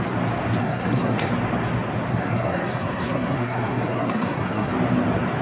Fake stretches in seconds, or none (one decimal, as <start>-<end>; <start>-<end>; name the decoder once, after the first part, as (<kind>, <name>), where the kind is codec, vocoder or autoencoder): 0.6-1.3 (codec, SNAC); 2.1-4.7